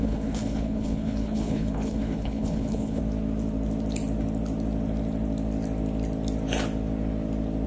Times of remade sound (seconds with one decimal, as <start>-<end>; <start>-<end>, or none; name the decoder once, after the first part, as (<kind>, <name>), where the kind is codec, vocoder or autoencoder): 0.0-3.0 (codec, HILCodec)

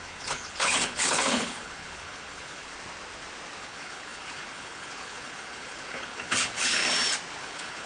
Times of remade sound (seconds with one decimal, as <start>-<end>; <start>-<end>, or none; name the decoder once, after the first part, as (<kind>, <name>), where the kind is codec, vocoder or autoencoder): 0.0-2.7 (codec, HILCodec); 3.6-6.8; 7.4-7.9

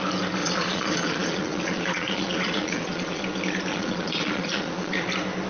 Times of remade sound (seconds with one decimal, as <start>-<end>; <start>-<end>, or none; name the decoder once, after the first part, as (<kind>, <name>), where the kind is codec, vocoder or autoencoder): 0.4-3.2 (vocoder, Vocos); 3.7-5.1

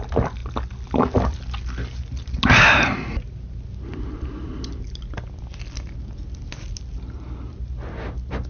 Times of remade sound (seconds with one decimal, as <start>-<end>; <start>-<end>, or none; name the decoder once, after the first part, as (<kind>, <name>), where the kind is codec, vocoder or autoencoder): none

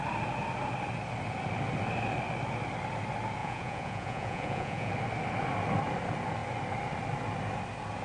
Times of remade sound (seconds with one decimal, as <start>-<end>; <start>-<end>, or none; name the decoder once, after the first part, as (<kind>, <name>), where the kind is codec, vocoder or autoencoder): 3.4-4.9 (vocoder, Vocos)

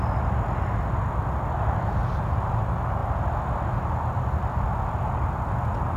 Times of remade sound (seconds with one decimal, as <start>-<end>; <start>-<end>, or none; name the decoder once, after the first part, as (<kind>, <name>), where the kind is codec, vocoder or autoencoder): 2.0-2.6 (vocoder, BigVGAN v2)